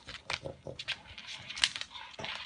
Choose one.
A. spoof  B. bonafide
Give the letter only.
B